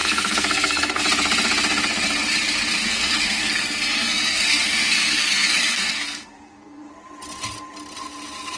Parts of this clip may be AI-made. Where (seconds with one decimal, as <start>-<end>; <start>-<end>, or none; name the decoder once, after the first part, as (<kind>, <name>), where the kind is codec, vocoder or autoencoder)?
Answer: 0.0-1.0 (codec, SNAC); 2.8-6.9